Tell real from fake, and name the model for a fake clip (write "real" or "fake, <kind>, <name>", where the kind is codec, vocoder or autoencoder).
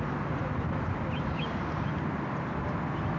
real